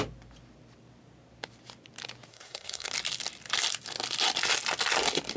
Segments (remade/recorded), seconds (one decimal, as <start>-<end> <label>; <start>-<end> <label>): 0.0-2.3 recorded; 2.3-2.9 remade; 2.9-5.4 recorded